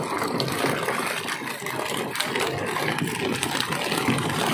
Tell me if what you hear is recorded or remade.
recorded